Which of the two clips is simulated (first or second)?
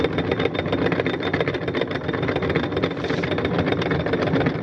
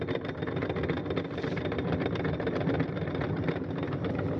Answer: first